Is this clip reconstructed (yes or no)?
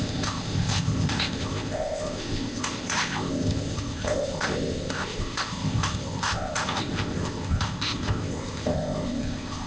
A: yes